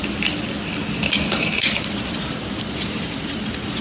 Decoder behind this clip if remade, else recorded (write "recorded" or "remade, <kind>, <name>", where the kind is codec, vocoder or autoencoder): recorded